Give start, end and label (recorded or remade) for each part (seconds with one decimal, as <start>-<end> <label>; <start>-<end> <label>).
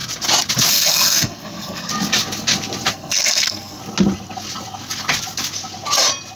0.0-0.7 recorded; 0.7-1.9 remade; 1.9-2.9 recorded; 2.9-3.8 remade; 3.8-6.4 recorded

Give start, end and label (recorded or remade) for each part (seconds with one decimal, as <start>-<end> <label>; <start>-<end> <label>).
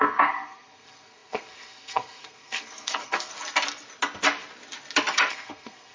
0.0-3.3 remade; 3.3-5.3 recorded; 5.3-5.9 remade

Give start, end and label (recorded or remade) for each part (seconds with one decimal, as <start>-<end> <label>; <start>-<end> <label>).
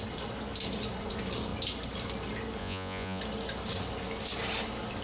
0.0-2.6 recorded; 2.6-3.2 remade; 3.2-5.0 recorded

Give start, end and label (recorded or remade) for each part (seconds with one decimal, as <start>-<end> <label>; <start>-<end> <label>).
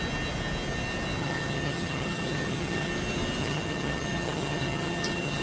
0.0-1.2 recorded; 1.2-2.9 remade; 2.9-3.4 recorded; 3.4-5.4 remade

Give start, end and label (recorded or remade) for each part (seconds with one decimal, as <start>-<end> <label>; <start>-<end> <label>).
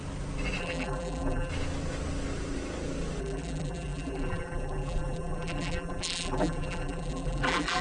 0.0-0.6 recorded; 0.6-1.5 remade; 1.5-3.2 recorded; 3.2-7.8 remade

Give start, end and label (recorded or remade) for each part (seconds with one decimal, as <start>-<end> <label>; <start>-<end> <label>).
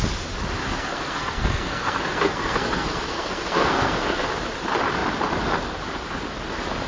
0.0-0.6 recorded; 0.6-4.3 remade; 4.3-6.9 recorded